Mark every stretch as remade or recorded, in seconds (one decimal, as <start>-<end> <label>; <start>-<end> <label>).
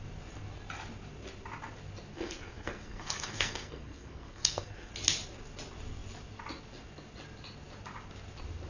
0.0-2.1 recorded; 2.1-4.9 remade; 4.9-8.7 recorded